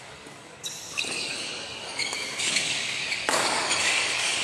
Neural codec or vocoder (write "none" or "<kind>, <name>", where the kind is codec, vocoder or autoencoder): codec, DAC